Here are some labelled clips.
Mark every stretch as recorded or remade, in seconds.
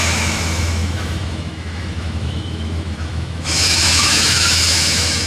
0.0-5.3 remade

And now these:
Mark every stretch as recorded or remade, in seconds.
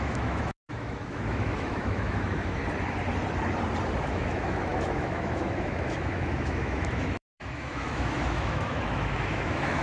0.0-2.6 remade; 2.6-4.0 recorded; 4.0-9.8 remade